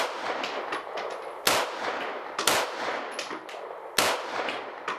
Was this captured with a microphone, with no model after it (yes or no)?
yes